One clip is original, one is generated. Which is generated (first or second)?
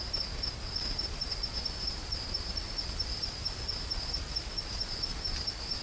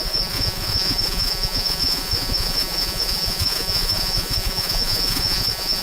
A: second